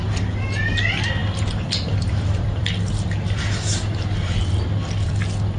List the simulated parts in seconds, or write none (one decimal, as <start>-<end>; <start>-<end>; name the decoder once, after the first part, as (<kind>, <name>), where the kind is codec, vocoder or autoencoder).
1.2-4.6 (vocoder, BigVGAN v2)